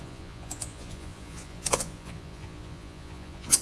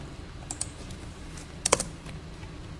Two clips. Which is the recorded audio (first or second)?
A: second